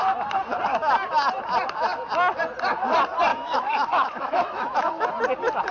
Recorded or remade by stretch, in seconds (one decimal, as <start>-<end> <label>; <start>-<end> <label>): 0.0-3.3 recorded; 3.3-5.1 remade; 5.1-5.7 recorded